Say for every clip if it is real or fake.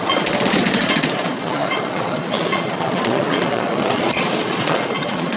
fake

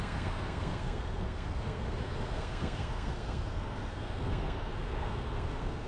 fake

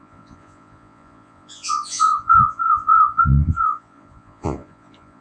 fake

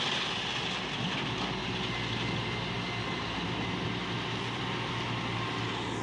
real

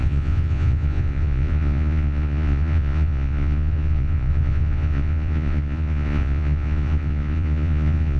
fake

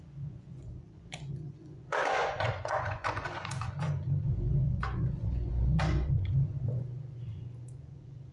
fake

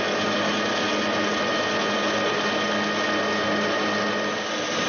real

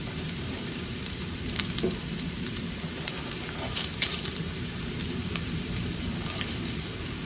fake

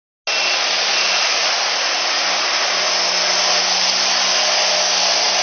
real